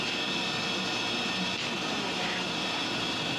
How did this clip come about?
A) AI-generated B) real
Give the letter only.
B